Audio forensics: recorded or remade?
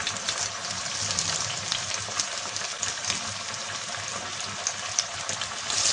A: recorded